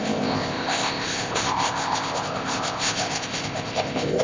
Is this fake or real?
fake